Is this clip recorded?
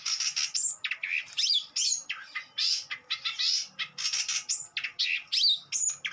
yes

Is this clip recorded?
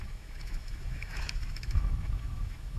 no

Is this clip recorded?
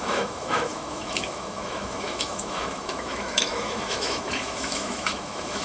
no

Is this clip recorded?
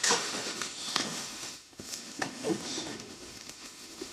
no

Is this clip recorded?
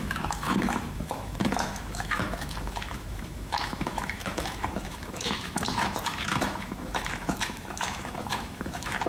no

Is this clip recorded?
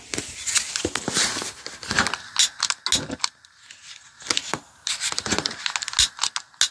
yes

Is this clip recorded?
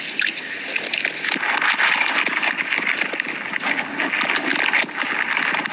yes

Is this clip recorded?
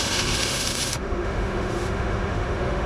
no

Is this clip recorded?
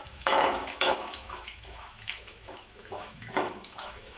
no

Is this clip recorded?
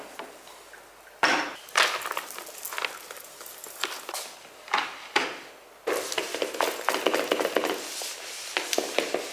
yes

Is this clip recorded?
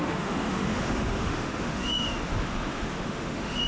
no